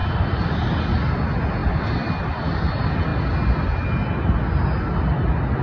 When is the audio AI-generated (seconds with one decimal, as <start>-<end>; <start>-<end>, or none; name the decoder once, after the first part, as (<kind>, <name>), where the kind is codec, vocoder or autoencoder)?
0.0-0.8 (vocoder, BigVGAN v2)